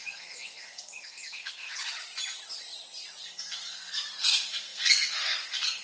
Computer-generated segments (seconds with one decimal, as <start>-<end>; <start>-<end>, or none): 0.0-1.7; 3.2-5.8